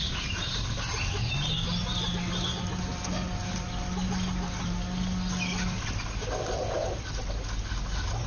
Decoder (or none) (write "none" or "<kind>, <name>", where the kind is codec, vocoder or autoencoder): none